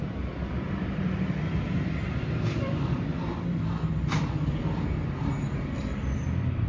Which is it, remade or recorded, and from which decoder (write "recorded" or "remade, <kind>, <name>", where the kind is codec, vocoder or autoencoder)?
remade, vocoder, BigVGAN v2